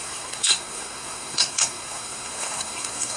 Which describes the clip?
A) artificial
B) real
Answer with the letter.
A